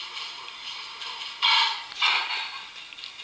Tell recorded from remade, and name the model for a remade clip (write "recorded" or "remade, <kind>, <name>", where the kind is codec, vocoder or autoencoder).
recorded